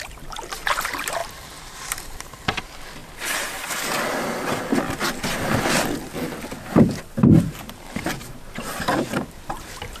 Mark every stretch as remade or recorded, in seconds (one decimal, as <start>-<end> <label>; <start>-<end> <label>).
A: 0.0-3.0 remade; 3.0-7.4 recorded; 7.4-10.0 remade